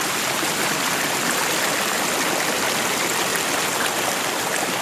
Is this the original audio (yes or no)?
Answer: yes